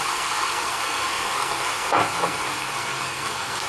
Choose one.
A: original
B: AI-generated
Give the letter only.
B